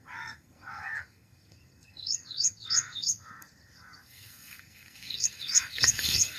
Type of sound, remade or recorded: remade